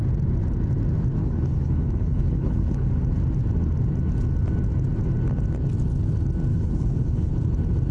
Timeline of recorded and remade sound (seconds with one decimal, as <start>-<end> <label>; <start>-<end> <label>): 0.0-1.2 recorded; 1.2-2.9 remade; 2.9-6.5 recorded; 6.5-7.3 remade; 7.3-7.9 recorded